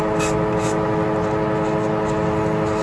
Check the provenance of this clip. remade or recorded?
recorded